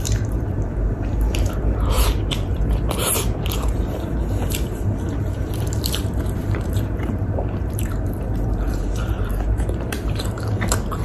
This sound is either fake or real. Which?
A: fake